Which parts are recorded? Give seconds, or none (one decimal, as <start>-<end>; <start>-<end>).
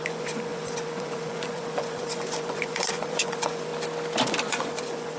3.7-4.5